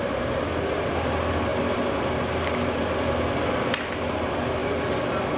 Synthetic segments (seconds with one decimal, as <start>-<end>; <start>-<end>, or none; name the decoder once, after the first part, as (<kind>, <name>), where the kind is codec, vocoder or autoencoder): none